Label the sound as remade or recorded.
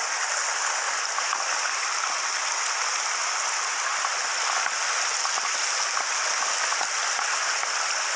recorded